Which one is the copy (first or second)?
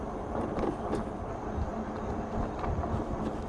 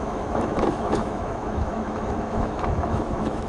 second